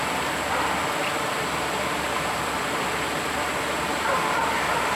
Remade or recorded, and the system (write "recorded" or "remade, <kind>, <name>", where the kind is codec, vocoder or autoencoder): recorded